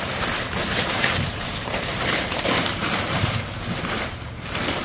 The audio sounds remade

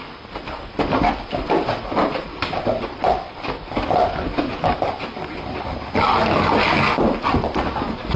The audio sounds recorded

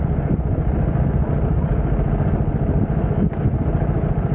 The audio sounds recorded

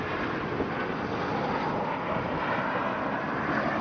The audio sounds recorded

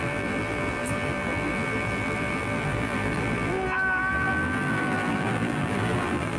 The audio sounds remade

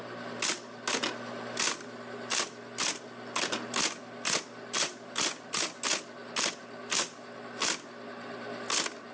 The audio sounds recorded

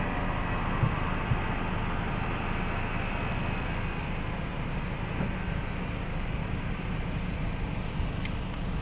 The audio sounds recorded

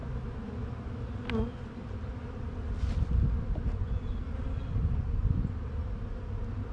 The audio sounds recorded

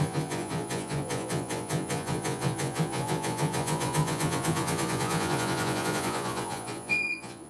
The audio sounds remade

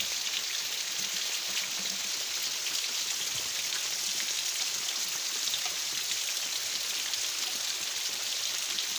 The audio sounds recorded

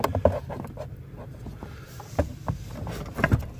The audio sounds recorded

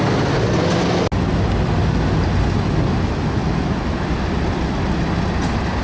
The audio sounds recorded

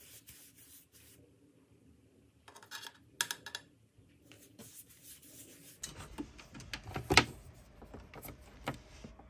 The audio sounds recorded